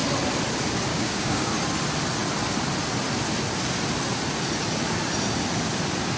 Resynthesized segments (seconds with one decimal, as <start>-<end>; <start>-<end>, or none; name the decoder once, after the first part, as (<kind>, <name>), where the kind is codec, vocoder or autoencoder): 0.9-1.5 (codec, DAC)